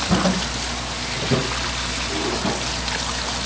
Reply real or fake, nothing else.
real